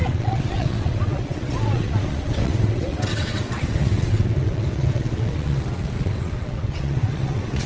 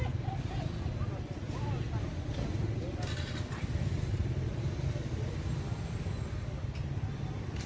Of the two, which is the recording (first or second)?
second